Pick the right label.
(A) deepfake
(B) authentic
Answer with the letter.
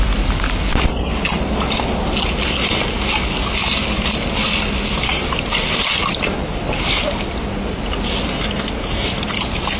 B